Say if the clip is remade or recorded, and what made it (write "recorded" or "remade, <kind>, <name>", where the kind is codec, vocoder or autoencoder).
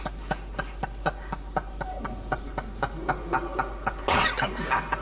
recorded